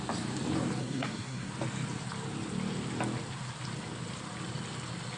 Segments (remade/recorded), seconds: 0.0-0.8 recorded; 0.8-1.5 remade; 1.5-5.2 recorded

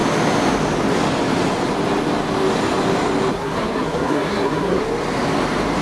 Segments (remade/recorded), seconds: 0.0-3.3 recorded; 3.3-4.8 remade; 4.8-5.8 recorded

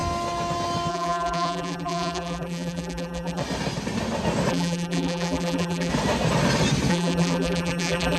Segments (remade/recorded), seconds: 0.0-0.9 recorded; 0.9-3.4 remade; 3.4-4.5 recorded; 4.5-5.9 remade; 5.9-6.9 recorded; 6.9-8.2 remade

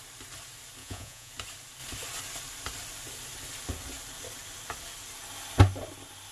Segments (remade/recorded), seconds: 0.0-0.8 recorded; 0.8-1.3 remade; 1.3-6.3 recorded

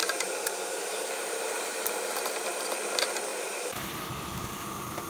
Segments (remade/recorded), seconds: 0.0-2.6 remade; 2.6-3.3 recorded; 3.3-4.2 remade; 4.2-5.1 recorded

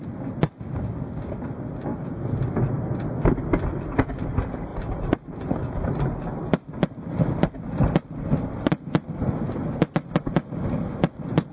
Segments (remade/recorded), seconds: 0.0-11.5 recorded